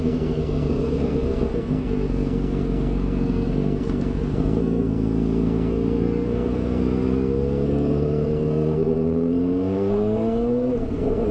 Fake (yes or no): yes